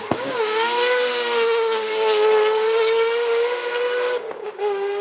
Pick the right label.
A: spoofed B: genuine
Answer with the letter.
A